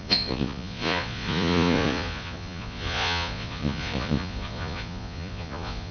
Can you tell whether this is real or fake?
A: fake